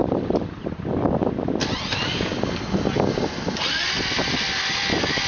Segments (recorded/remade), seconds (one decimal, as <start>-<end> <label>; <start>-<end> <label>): 0.0-5.3 recorded